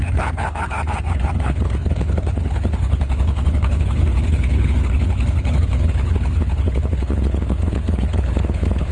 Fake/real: fake